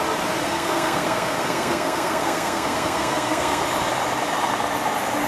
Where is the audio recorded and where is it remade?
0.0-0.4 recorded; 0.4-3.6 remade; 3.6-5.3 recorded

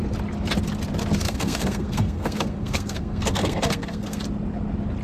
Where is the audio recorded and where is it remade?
0.0-1.2 recorded; 1.2-4.2 remade; 4.2-5.0 recorded

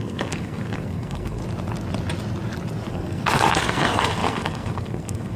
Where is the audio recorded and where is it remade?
0.0-1.4 remade; 1.4-2.9 recorded; 2.9-5.4 remade

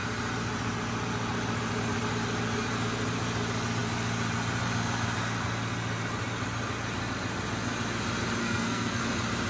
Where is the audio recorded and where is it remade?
0.0-8.4 recorded; 8.4-9.0 remade; 9.0-9.5 recorded

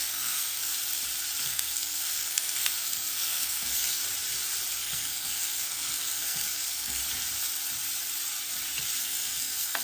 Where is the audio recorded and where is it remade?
0.0-0.7 remade; 0.7-1.4 recorded; 1.4-4.0 remade; 4.0-4.7 recorded; 4.7-7.0 remade; 7.0-9.0 recorded; 9.0-9.8 remade